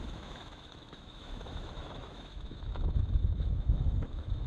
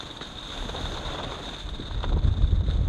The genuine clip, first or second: second